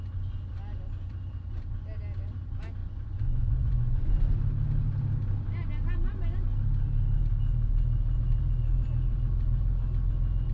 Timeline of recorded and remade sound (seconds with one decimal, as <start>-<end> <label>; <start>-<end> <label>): 0.0-2.8 recorded; 2.8-4.1 remade; 4.1-10.5 recorded